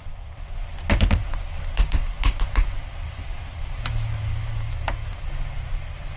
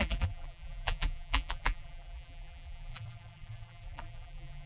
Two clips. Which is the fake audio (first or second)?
second